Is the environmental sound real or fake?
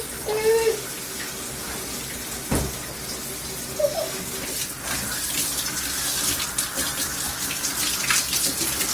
fake